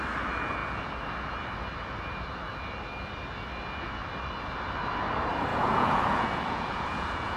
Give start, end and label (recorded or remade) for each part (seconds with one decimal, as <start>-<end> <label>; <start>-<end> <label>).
0.0-5.5 recorded; 5.5-7.4 remade